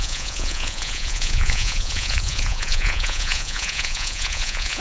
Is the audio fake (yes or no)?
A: yes